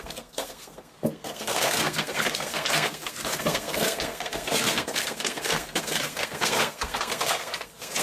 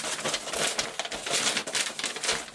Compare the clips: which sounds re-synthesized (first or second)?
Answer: first